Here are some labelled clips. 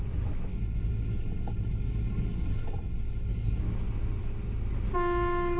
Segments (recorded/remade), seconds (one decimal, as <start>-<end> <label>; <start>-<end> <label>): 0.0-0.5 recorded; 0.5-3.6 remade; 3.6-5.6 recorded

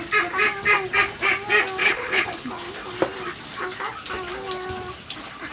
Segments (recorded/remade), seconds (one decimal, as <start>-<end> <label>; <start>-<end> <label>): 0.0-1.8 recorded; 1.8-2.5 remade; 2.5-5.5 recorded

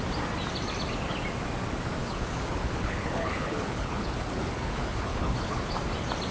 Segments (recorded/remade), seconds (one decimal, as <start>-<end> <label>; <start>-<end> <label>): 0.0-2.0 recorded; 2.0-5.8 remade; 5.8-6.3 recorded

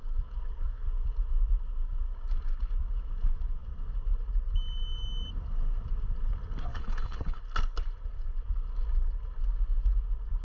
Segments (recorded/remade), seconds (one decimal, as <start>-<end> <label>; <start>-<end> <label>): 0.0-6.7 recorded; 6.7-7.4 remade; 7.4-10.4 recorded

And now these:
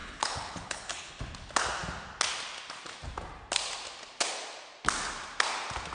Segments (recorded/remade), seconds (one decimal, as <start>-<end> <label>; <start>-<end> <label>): 0.0-1.2 remade; 1.2-5.9 recorded

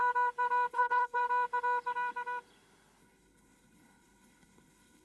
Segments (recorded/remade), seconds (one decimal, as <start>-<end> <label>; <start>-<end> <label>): 0.0-0.7 recorded; 0.7-1.2 remade; 1.2-3.0 recorded; 3.0-5.0 remade

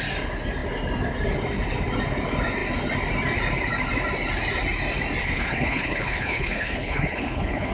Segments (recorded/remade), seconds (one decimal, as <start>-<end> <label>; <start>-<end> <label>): 0.0-5.2 recorded; 5.2-7.7 remade

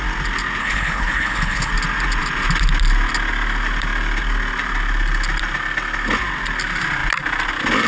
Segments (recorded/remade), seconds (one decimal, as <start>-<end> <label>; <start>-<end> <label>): 0.0-0.6 recorded; 0.6-1.7 remade; 1.7-7.9 recorded